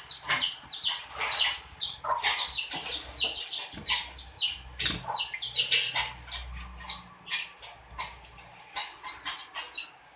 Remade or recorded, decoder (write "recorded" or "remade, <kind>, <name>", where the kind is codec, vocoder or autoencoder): recorded